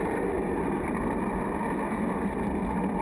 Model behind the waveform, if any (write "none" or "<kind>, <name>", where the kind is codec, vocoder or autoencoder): none